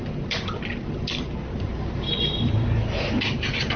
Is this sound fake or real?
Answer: real